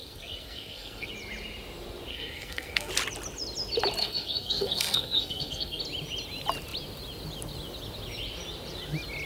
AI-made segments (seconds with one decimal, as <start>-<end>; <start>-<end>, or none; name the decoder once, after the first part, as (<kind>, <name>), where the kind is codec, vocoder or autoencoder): 0.0-1.1 (codec, SNAC); 2.1-2.9; 4.0-5.8